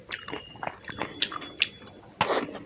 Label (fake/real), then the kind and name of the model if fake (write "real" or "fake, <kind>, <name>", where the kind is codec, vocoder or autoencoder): real